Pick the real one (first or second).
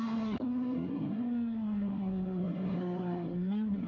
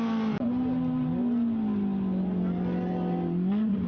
second